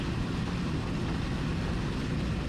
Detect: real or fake real